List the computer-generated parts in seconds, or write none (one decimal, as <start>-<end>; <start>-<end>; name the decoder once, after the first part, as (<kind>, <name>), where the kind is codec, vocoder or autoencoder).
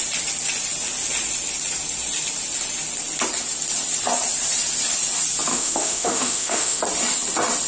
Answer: 5.5-6.8 (autoencoder, DAC-VAE)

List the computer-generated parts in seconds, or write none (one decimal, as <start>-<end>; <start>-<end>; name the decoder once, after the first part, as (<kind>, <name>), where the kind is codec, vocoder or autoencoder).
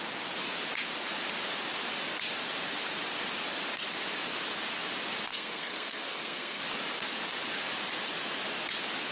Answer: 5.3-6.6 (codec, SNAC)